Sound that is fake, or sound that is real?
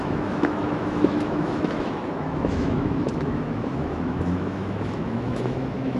fake